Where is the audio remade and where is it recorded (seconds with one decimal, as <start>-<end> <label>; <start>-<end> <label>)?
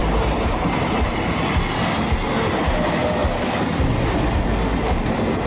0.0-1.1 remade; 1.1-5.5 recorded